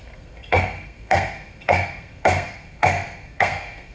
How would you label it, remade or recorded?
remade